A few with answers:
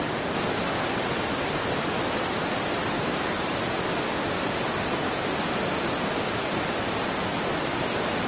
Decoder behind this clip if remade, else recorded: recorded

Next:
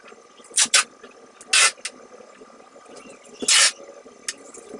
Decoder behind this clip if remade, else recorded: recorded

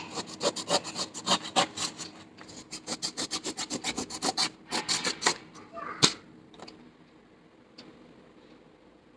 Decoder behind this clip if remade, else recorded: recorded